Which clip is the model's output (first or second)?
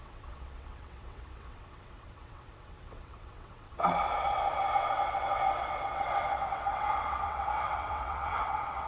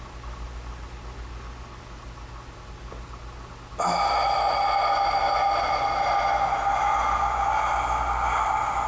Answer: first